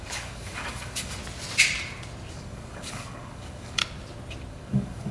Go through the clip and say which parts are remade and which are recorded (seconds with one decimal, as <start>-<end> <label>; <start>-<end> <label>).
0.0-1.2 remade; 1.2-2.3 recorded; 2.3-3.8 remade; 3.8-4.5 recorded; 4.5-5.1 remade